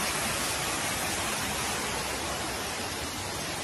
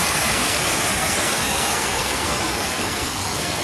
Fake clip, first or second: second